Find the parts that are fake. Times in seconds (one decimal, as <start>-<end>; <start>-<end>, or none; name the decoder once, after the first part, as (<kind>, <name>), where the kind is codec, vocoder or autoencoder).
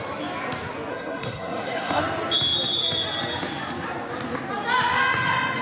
0.9-2.0 (codec, SNAC)